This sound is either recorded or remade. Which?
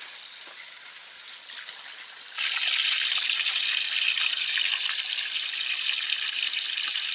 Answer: recorded